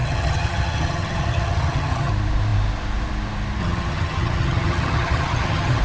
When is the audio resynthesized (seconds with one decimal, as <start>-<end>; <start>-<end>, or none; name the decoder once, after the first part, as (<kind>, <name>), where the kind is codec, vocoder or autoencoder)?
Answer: 0.0-2.1 (vocoder, HiFi-GAN); 3.6-5.8